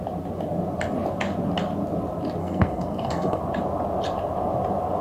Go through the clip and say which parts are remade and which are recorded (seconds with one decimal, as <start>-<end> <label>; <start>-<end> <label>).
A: 0.0-2.4 recorded; 2.4-3.4 remade; 3.4-5.0 recorded